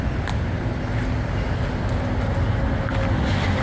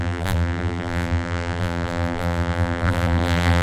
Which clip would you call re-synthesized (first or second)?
second